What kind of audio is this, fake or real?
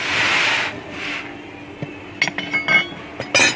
real